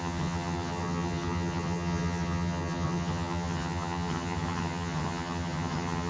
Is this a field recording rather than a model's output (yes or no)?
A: no